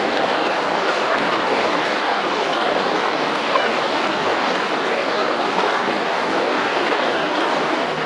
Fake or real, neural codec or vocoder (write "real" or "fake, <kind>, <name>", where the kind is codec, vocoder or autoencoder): fake, codec, DAC